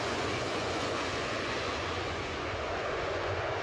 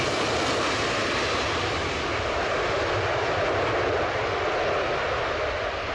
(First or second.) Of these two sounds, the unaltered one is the second